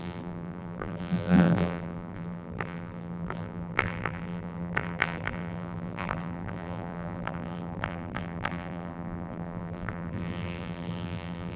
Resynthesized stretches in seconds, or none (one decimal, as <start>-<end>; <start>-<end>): 0.0-11.6